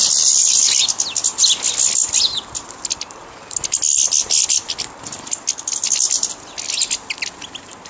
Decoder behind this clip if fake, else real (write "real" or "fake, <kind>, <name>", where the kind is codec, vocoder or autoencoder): real